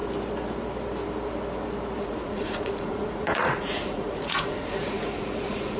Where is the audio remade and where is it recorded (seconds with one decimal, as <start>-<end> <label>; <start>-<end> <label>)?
0.0-2.0 recorded; 2.0-5.8 remade